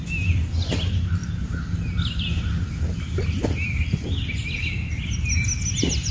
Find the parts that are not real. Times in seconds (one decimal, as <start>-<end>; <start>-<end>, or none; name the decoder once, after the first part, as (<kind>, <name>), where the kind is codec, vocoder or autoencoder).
none